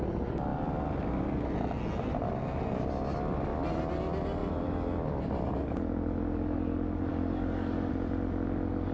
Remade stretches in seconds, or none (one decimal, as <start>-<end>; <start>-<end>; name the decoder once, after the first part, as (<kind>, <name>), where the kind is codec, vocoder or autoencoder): 7.1-7.9 (codec, DAC)